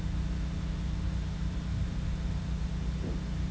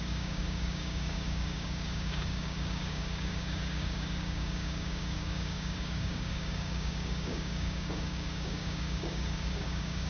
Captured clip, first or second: first